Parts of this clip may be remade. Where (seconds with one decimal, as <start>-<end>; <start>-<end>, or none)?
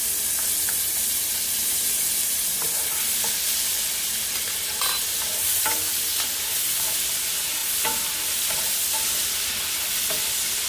none